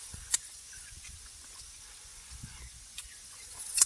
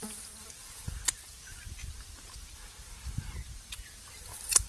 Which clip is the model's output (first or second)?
first